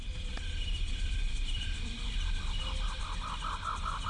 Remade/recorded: recorded